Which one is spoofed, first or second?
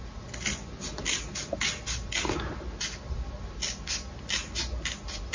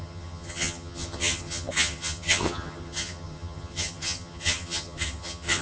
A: second